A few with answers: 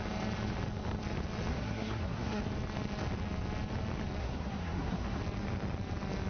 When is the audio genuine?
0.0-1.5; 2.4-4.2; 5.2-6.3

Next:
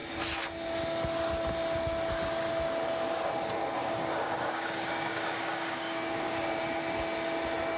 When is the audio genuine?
0.0-3.8; 6.6-7.8

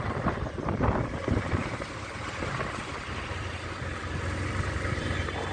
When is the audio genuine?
0.0-5.5

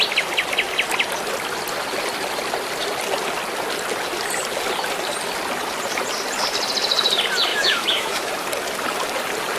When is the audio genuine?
0.0-7.5; 8.3-9.6

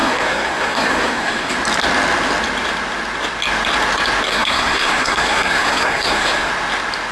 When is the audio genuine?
1.5-4.3; 6.5-7.1